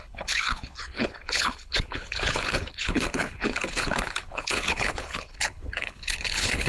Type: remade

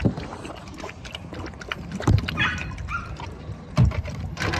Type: remade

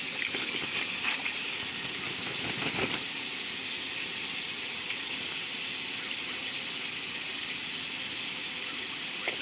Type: recorded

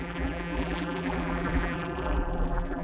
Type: remade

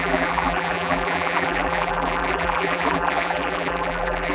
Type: remade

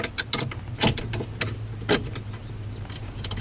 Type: recorded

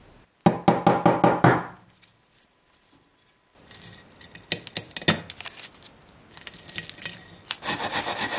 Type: recorded